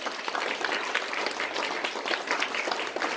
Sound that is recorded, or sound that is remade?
recorded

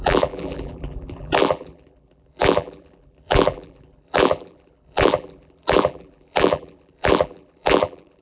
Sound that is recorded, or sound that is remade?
remade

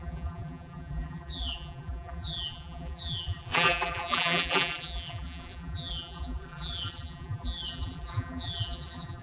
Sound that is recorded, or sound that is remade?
remade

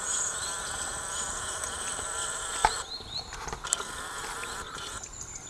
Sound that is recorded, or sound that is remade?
remade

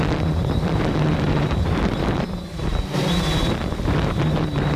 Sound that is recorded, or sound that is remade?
remade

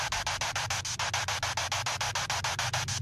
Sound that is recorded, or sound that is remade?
recorded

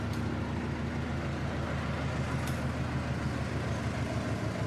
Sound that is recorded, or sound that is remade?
recorded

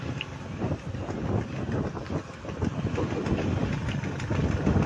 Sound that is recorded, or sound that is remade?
recorded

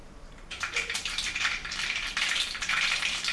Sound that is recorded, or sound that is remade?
remade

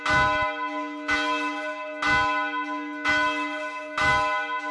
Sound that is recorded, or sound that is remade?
recorded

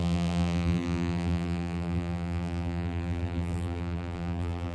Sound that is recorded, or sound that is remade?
remade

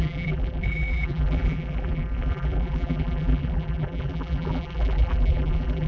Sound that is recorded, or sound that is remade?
remade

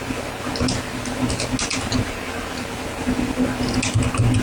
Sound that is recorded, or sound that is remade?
recorded